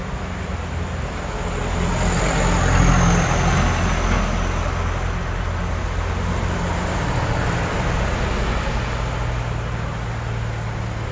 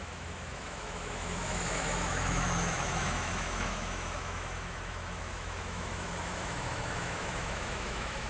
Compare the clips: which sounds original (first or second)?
first